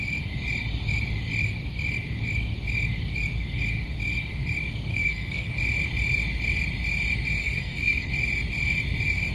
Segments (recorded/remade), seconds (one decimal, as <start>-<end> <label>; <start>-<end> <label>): 0.0-4.9 recorded; 4.9-5.5 remade; 5.5-7.4 recorded; 7.4-8.1 remade; 8.1-9.3 recorded